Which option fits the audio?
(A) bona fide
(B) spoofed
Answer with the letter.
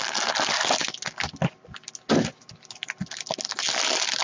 A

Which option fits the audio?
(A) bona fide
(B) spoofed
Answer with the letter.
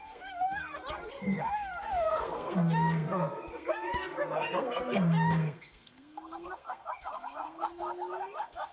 B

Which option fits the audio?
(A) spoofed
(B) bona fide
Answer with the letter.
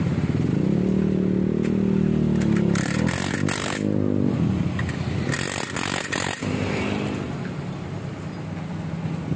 B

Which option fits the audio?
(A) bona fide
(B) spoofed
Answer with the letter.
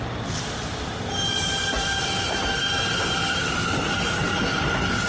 A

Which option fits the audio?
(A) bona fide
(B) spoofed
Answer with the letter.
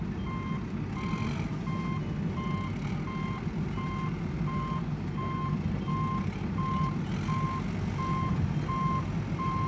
A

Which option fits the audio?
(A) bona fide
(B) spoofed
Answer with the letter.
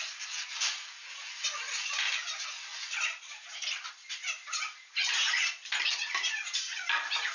A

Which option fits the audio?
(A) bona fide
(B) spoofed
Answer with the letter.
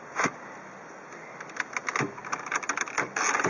A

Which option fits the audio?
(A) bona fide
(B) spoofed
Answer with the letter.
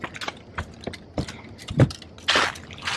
A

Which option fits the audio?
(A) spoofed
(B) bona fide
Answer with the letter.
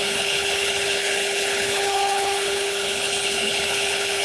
A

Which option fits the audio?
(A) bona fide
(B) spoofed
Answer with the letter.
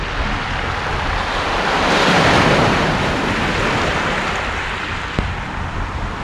A